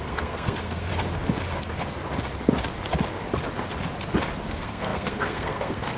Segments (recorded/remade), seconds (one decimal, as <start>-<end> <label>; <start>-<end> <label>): 0.0-0.9 remade; 0.9-4.5 recorded; 4.5-6.0 remade